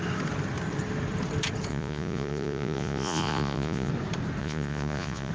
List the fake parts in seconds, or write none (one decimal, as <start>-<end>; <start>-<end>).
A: 1.7-3.9; 4.4-5.3